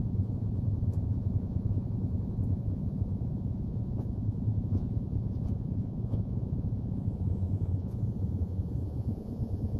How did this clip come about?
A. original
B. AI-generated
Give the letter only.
B